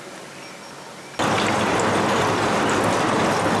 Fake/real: real